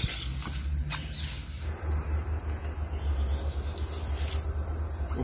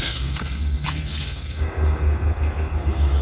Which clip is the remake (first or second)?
second